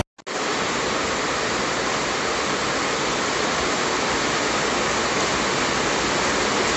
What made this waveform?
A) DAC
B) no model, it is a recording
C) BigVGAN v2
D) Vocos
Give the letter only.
B